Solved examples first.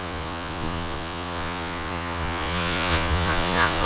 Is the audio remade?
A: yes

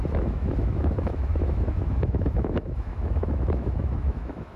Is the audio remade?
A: yes